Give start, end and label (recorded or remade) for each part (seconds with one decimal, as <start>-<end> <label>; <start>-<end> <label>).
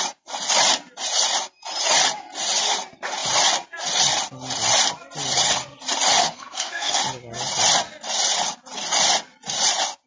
0.0-6.2 recorded; 6.2-7.0 remade; 7.0-10.1 recorded